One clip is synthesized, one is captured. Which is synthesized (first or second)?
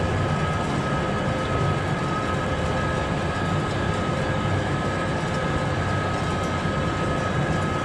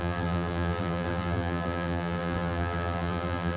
second